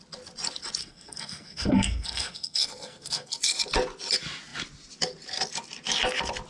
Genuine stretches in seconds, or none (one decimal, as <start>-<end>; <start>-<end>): 0.0-0.8; 3.4-6.5